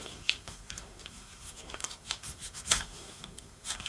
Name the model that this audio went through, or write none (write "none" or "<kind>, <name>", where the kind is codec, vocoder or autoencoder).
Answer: codec, SNAC